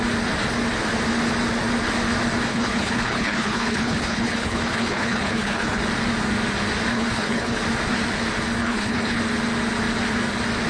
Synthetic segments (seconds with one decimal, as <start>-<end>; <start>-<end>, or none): 2.5-5.8; 6.9-7.6; 8.6-9.2